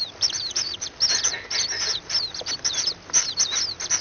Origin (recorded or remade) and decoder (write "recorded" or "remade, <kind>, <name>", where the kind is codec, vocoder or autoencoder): recorded